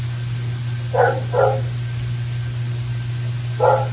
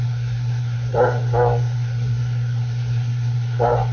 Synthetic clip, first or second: second